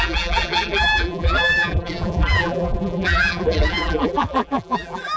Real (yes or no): no